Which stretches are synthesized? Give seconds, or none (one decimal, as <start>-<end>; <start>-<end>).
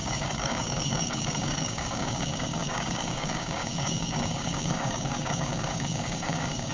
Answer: 0.0-6.7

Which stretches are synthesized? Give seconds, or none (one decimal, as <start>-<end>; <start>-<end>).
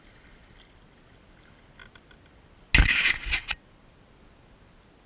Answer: none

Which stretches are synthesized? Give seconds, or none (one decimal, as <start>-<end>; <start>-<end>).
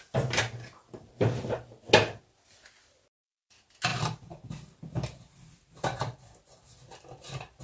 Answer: none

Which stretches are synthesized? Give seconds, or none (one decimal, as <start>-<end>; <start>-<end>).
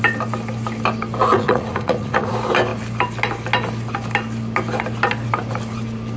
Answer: 1.3-2.3